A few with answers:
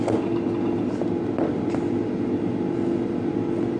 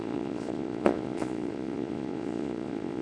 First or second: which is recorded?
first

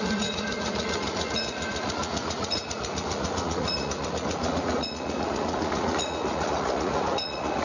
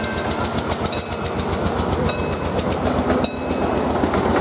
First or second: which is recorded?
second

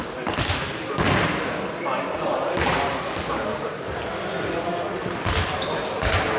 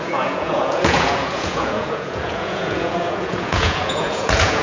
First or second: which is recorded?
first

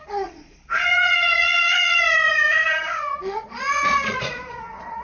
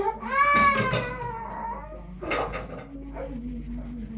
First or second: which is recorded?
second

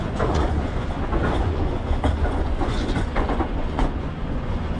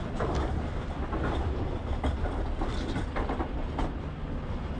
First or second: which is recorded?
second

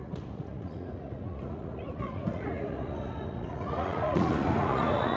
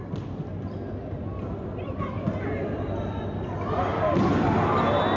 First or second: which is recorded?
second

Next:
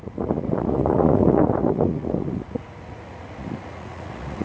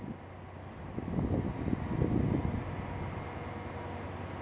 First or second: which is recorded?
second